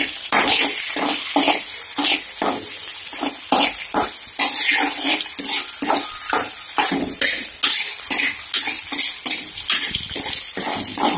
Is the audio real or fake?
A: real